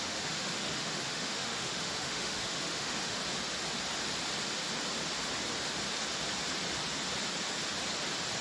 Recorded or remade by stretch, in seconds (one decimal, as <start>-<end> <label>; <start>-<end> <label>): 0.0-3.2 remade; 3.2-8.4 recorded